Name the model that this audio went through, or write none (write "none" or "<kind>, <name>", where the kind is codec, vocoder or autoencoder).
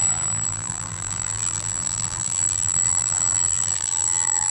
vocoder, BigVGAN v2